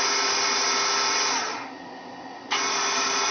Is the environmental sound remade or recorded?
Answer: recorded